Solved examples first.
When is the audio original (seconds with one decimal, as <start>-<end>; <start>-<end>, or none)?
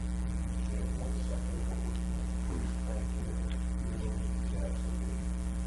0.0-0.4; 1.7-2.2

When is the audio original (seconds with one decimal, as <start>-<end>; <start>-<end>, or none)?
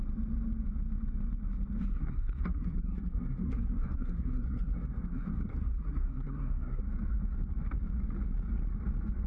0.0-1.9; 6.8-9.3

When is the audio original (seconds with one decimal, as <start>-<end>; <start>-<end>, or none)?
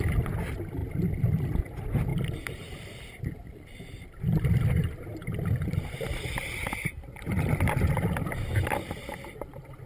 0.0-9.9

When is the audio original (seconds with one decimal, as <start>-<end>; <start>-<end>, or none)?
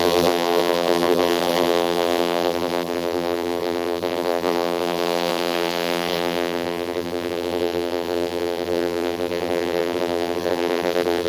none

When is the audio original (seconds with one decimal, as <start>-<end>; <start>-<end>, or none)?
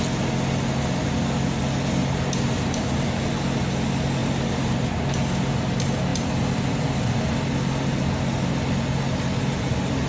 0.0-2.0; 3.3-10.1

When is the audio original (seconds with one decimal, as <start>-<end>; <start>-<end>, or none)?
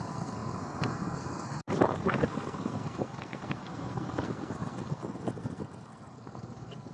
none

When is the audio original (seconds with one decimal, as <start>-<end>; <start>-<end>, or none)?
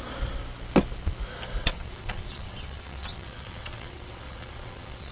0.0-1.6